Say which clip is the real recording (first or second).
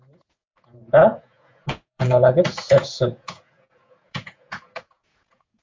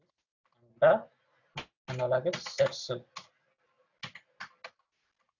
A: second